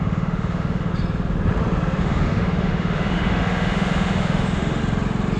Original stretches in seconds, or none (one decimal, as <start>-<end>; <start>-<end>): 0.9-2.0; 4.8-5.4